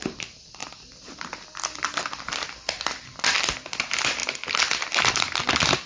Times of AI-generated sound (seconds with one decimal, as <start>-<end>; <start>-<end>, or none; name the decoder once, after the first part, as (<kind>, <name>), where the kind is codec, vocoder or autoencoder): 0.6-3.0 (vocoder, BigVGAN v2)